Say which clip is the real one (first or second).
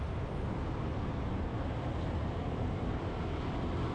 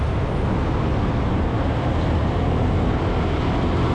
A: second